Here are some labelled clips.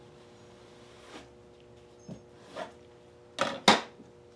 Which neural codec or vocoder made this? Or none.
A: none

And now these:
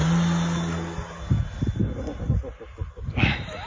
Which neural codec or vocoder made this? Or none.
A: none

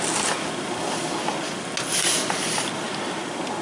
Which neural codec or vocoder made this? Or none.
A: none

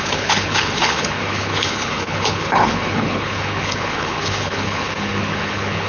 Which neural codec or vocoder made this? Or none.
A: codec, HILCodec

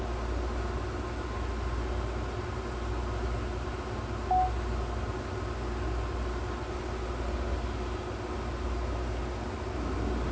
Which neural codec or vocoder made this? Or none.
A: none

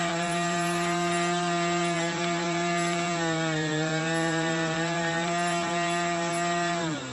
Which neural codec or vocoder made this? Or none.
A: vocoder, BigVGAN v2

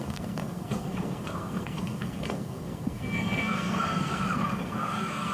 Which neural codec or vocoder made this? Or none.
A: codec, SNAC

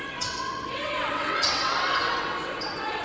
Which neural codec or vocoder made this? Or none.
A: vocoder, WaveNeXt